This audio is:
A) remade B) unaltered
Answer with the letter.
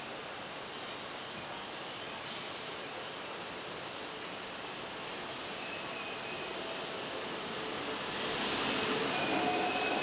B